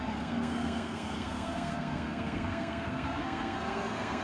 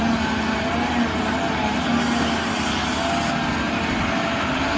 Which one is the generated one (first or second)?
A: first